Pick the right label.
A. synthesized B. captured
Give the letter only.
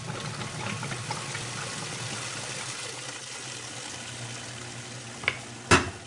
B